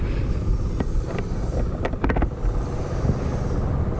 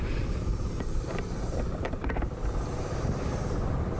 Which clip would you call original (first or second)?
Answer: first